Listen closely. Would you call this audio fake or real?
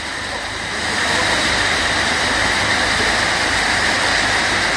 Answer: real